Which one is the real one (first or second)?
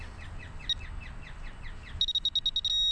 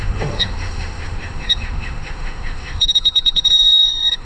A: first